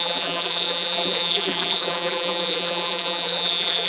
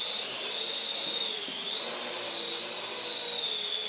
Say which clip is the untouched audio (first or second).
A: second